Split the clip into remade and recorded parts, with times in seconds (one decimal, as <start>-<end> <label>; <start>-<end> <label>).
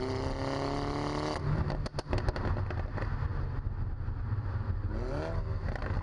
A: 0.0-6.0 recorded